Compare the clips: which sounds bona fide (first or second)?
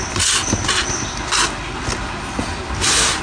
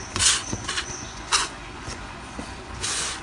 first